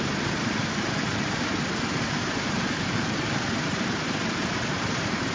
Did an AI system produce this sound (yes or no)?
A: yes